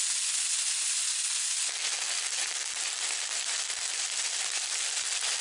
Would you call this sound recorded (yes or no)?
yes